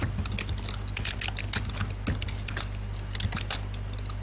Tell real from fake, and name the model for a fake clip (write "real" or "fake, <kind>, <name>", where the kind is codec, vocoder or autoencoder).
real